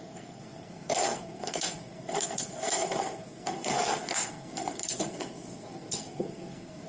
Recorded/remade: remade